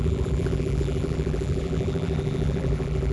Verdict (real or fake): fake